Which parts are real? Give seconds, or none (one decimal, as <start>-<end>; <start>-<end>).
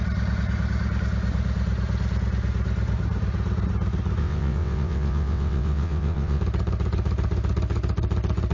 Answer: 0.0-4.2; 6.4-8.5